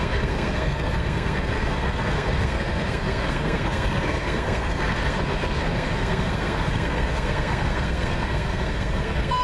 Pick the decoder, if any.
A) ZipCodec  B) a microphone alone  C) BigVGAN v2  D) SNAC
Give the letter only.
D